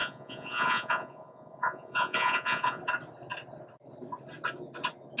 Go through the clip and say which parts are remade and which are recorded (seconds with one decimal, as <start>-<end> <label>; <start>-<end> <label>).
0.0-2.8 remade; 2.8-5.2 recorded